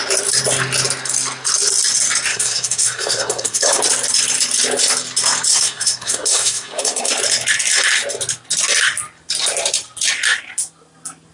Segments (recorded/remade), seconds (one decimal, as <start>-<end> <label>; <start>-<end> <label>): 0.0-2.3 recorded; 2.3-3.8 remade; 3.8-5.5 recorded; 5.5-7.1 remade; 7.1-11.3 recorded

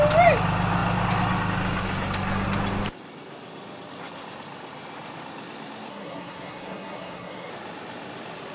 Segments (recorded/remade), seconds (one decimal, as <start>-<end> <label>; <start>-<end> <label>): 0.0-5.9 recorded; 5.9-7.5 remade; 7.5-8.5 recorded

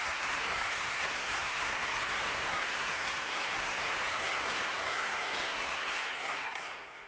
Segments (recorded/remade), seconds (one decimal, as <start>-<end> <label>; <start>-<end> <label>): 0.0-7.1 remade